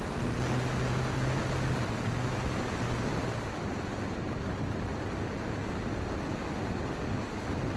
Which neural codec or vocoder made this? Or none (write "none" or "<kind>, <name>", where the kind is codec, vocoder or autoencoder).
none